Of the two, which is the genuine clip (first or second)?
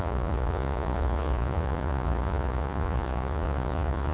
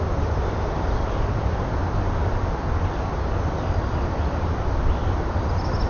second